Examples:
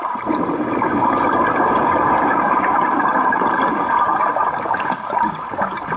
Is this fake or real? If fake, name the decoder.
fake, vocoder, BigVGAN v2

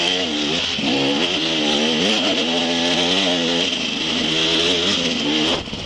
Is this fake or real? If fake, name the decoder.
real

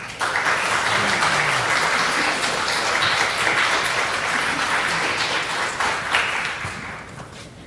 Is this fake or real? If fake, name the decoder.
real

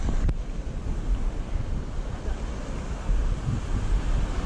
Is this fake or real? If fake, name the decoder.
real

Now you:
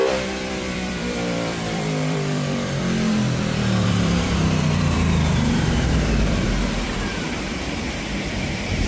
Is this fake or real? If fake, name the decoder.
fake, vocoder, BigVGAN v2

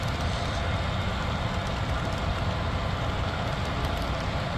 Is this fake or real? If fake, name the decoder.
real